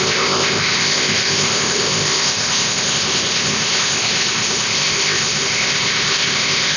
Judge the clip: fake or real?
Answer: fake